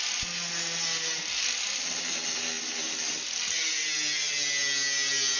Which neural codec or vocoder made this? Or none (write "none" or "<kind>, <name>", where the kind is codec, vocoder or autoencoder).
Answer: none